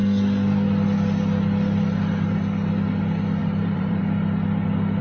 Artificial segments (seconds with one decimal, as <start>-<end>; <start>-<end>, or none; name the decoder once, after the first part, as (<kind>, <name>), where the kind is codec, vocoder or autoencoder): 3.4-4.0 (vocoder, BigVGAN v2)

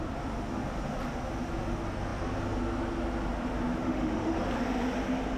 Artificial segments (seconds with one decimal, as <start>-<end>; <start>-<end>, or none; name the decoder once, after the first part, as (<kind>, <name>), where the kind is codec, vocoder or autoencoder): 3.8-4.4 (autoencoder, DAC-VAE)

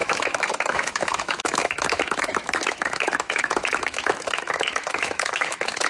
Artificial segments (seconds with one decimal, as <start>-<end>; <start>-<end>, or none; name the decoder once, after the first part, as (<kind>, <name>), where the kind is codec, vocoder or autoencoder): 0.0-5.9 (autoencoder, DAC-VAE)

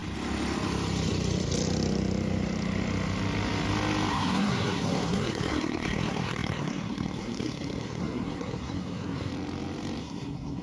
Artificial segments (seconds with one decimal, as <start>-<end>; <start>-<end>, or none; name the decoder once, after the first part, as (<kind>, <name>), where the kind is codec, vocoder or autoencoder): 4.1-9.3 (codec, SNAC); 10.0-10.6

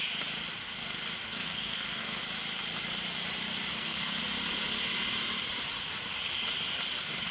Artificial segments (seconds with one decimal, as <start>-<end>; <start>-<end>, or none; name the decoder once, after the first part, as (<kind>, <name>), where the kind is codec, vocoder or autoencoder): 1.3-2.2 (codec, SNAC); 3.7-4.2

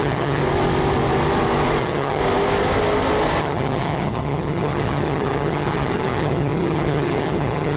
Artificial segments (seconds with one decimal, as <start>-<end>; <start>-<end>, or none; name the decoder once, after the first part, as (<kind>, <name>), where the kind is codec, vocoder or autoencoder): 0.0-0.4 (vocoder, HiFi-GAN); 1.8-2.2; 3.4-7.8